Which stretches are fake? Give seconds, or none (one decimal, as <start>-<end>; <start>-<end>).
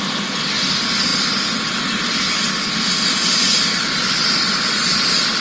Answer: none